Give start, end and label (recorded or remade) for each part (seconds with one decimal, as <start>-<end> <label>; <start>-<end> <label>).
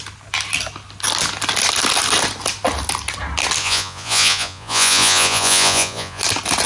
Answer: 0.0-3.6 recorded; 3.6-6.2 remade; 6.2-6.7 recorded